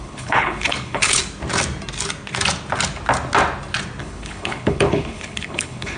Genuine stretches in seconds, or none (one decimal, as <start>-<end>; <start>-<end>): 1.2-4.0